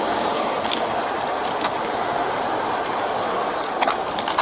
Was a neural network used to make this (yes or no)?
no